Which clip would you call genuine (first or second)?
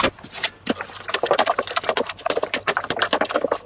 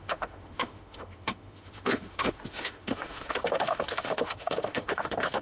first